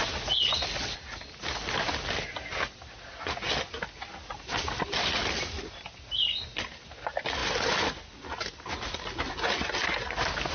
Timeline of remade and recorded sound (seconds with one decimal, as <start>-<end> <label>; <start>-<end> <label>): 0.0-10.5 recorded